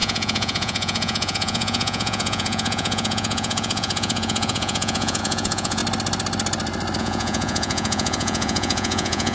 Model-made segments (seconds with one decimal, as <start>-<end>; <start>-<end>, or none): 0.0-5.8; 7.0-9.3